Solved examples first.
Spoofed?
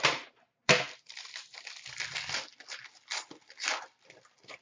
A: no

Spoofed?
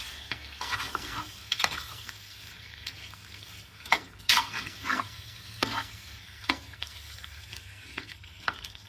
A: yes